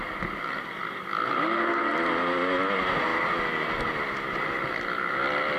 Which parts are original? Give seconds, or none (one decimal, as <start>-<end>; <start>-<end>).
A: 0.0-5.6